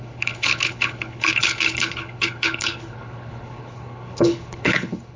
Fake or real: fake